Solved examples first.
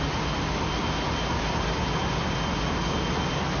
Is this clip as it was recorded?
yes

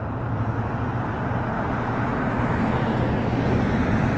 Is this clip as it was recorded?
yes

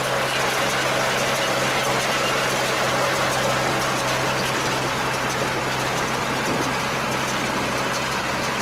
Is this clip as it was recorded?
yes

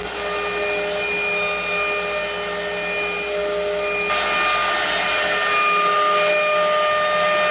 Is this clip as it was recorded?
yes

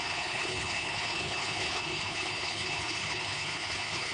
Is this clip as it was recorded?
no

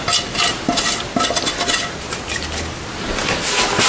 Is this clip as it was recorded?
yes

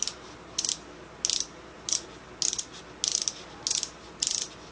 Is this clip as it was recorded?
yes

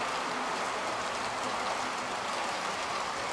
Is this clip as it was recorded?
yes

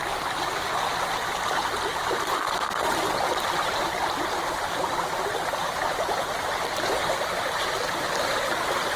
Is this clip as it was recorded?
yes